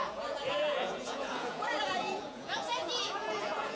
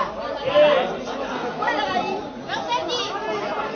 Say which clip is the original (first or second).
second